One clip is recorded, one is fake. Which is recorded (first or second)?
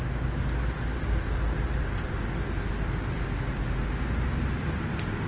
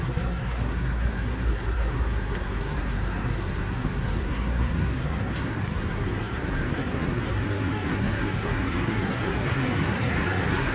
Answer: first